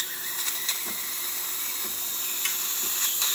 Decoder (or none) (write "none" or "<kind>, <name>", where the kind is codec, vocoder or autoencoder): none